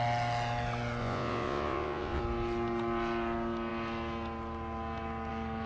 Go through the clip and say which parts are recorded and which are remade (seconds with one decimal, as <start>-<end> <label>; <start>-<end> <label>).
0.0-1.0 recorded; 1.0-2.2 remade; 2.2-5.7 recorded